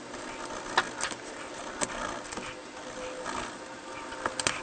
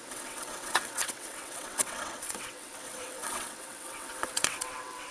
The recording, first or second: first